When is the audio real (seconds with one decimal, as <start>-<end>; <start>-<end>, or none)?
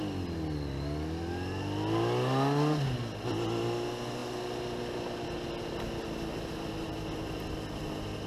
0.0-8.3